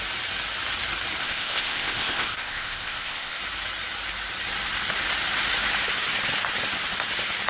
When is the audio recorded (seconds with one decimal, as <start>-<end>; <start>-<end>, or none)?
0.0-1.2; 3.4-7.5